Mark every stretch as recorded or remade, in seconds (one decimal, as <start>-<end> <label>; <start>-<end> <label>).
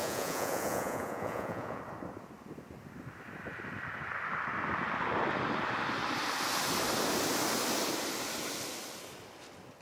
0.0-1.8 remade; 1.8-9.8 recorded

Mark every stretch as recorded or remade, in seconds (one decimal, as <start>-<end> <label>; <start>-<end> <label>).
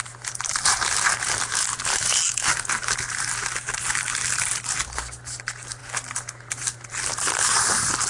0.0-1.9 recorded; 1.9-2.5 remade; 2.5-8.1 recorded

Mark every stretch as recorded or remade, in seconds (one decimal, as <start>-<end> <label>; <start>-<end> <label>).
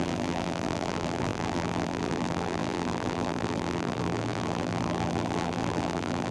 0.0-6.3 remade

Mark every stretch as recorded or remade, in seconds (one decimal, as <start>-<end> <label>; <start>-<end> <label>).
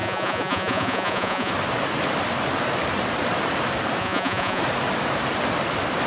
0.0-1.5 remade; 1.5-4.0 recorded; 4.0-4.6 remade; 4.6-6.1 recorded